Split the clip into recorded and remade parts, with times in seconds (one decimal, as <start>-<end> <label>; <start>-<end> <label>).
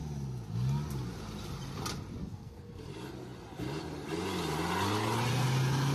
0.0-2.2 recorded; 2.2-2.8 remade; 2.8-5.9 recorded